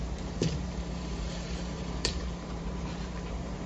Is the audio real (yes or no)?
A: no